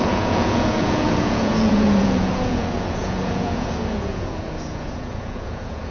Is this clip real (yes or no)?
no